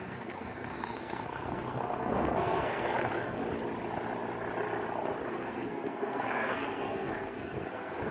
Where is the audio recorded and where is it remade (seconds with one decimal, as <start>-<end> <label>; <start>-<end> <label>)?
0.0-3.4 remade; 3.4-5.3 recorded; 5.3-8.1 remade